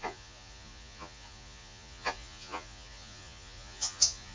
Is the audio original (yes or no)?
no